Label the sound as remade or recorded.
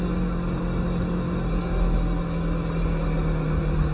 recorded